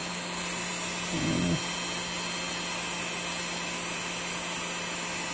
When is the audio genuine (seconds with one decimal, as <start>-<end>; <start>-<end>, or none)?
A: 0.0-5.3